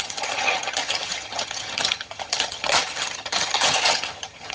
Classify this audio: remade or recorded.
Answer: remade